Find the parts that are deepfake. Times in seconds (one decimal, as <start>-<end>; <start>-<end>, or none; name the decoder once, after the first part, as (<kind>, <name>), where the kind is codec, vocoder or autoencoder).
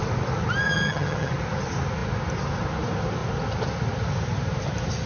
0.6-1.3 (vocoder, HiFi-GAN)